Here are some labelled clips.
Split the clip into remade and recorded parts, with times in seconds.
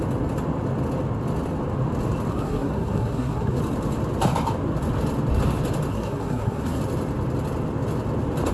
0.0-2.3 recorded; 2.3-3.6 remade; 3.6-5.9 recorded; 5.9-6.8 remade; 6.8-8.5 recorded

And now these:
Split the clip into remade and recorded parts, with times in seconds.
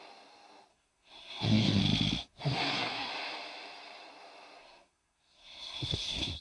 0.0-0.7 recorded; 0.7-1.8 remade; 1.8-2.3 recorded; 2.3-3.1 remade; 3.1-4.6 recorded; 4.6-6.4 remade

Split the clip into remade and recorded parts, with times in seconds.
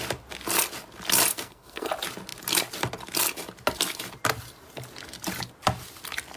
0.0-1.3 recorded; 1.3-1.9 remade; 1.9-6.4 recorded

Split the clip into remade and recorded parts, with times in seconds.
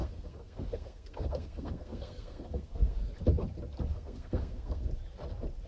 0.0-3.1 remade; 3.1-3.9 recorded; 3.9-4.9 remade; 4.9-5.7 recorded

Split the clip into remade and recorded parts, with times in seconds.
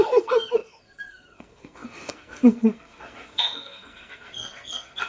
0.0-5.1 remade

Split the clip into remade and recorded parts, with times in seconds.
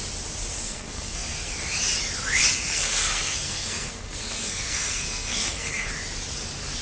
0.0-0.5 recorded; 0.5-1.5 remade; 1.5-2.5 recorded; 2.5-5.9 remade; 5.9-6.8 recorded